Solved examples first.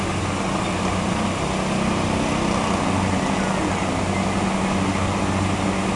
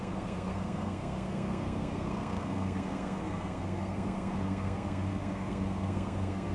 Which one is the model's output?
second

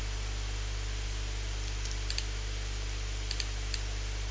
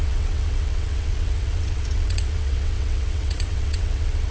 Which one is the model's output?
second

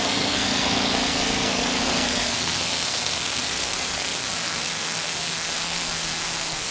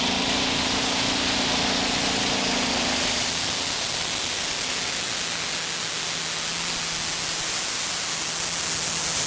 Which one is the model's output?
first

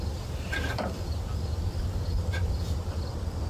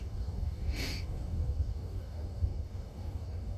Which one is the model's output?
second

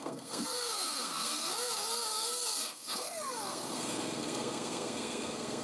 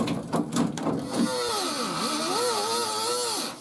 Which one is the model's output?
first